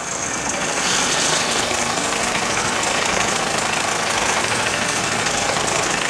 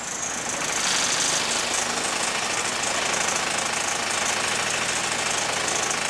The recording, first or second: second